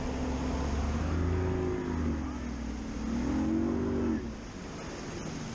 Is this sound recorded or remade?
recorded